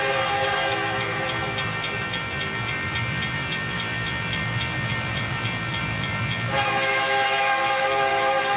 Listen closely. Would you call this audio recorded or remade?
remade